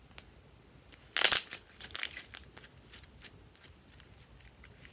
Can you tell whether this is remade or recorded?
recorded